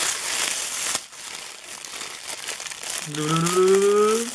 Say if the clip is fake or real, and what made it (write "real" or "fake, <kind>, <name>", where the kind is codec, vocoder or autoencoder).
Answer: real